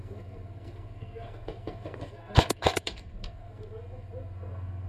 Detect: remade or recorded remade